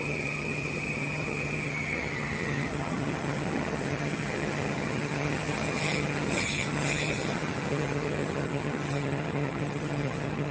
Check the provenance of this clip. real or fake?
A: fake